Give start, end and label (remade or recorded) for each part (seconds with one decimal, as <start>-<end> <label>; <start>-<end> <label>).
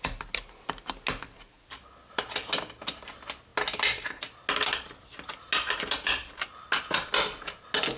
0.0-8.0 recorded